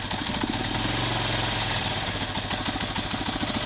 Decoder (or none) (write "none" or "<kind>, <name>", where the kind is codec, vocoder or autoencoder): none